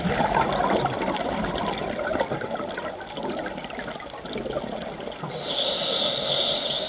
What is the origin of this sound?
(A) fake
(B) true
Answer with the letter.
B